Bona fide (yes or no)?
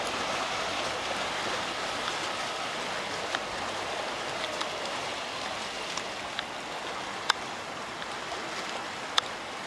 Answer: yes